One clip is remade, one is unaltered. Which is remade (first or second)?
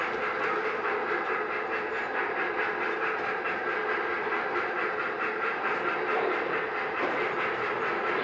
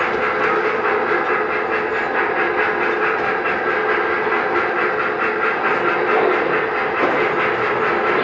first